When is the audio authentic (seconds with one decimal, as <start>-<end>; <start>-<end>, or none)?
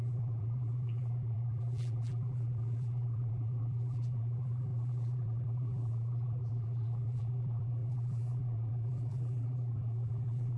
none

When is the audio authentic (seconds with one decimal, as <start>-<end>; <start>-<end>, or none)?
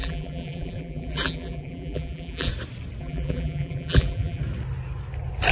2.5-3.0; 4.4-5.5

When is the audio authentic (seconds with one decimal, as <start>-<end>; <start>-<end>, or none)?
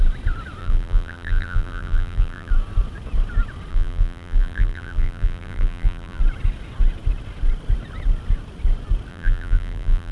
0.0-0.6; 2.5-3.7; 6.2-9.1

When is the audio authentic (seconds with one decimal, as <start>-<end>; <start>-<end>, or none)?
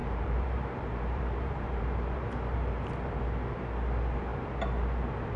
3.2-5.4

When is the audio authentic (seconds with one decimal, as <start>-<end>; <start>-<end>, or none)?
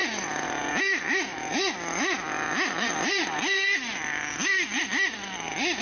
0.0-0.8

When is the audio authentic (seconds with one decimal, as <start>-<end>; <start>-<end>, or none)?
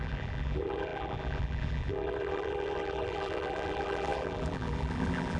none